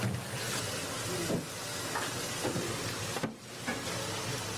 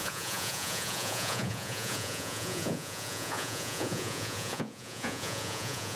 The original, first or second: first